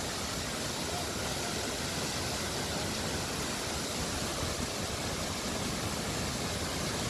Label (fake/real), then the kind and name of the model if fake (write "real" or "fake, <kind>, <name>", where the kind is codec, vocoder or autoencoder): real